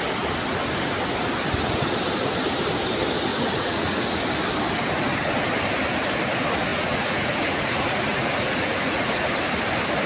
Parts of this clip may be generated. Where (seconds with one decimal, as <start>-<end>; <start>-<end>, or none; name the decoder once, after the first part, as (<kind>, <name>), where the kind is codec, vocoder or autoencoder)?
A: 3.3-4.2 (vocoder, Vocos); 6.7-9.3